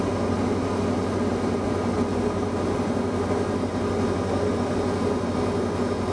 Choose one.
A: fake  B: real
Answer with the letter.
B